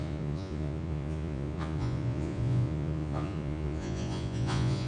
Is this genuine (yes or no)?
no